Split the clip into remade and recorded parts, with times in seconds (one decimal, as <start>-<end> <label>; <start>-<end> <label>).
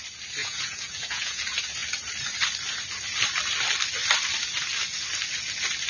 0.0-0.4 recorded; 0.4-1.4 remade; 1.4-5.9 recorded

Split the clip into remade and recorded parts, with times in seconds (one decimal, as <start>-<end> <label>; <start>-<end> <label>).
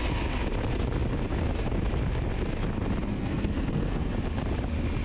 0.0-3.1 recorded; 3.1-4.1 remade; 4.1-5.0 recorded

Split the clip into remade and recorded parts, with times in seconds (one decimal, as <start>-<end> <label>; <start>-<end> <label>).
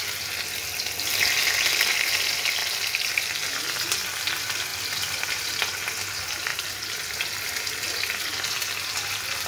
0.0-2.6 recorded; 2.6-3.5 remade; 3.5-4.7 recorded; 4.7-5.3 remade; 5.3-6.5 recorded; 6.5-8.3 remade; 8.3-9.5 recorded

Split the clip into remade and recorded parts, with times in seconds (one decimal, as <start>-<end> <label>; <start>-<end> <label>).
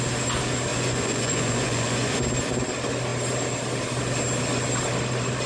0.0-0.7 recorded; 0.7-2.2 remade; 2.2-5.5 recorded